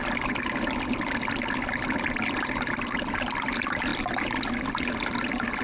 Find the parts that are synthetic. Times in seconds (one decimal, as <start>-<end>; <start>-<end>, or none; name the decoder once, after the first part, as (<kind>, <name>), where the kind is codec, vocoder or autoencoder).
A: none